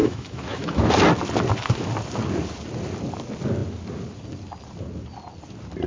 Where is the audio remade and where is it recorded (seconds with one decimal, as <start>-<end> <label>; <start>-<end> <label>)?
0.0-0.8 remade; 0.8-5.9 recorded